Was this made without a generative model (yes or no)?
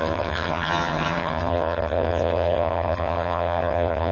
no